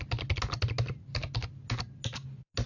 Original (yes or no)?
yes